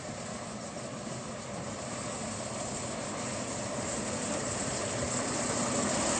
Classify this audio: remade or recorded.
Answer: recorded